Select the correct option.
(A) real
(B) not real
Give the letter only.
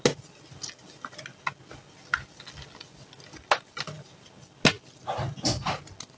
A